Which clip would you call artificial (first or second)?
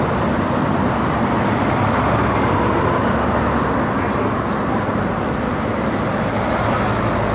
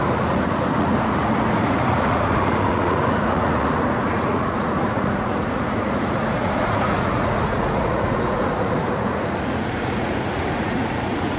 second